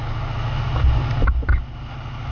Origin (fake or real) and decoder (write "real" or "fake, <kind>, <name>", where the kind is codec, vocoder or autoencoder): real